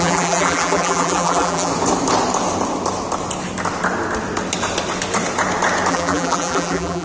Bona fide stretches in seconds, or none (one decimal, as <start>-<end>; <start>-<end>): 1.7-5.9